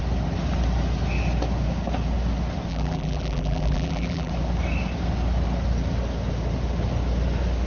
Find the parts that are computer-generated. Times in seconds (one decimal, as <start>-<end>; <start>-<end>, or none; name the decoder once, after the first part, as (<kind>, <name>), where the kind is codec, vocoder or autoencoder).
2.7-4.3 (vocoder, BigVGAN v2)